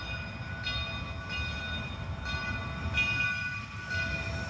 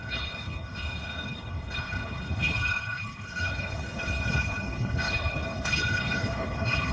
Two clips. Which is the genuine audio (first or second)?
first